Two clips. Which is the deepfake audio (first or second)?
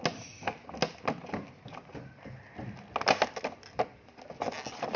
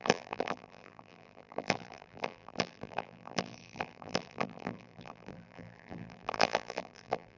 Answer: second